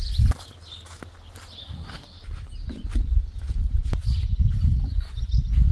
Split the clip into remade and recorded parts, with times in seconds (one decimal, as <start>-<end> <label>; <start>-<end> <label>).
0.0-1.6 recorded; 1.6-2.2 remade; 2.2-5.7 recorded